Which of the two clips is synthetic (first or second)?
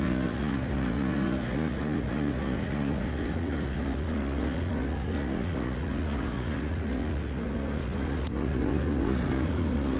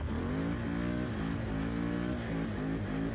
first